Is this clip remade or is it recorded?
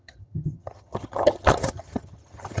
remade